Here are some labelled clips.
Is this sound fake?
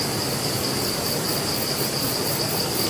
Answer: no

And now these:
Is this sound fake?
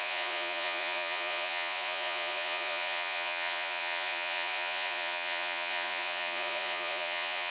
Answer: yes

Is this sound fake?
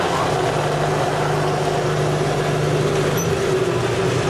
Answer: no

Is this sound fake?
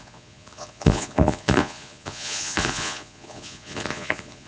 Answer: yes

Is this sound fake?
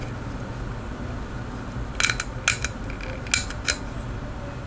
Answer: no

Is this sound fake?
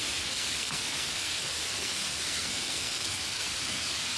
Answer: yes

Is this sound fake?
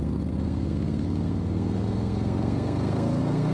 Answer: yes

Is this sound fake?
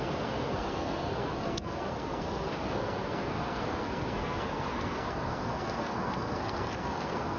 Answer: yes